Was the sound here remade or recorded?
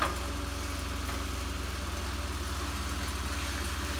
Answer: recorded